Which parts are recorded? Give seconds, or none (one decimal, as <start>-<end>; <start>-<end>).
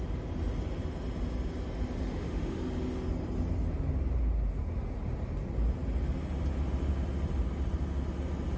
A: 0.0-2.0; 2.6-8.6